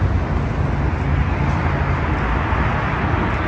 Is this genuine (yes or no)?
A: yes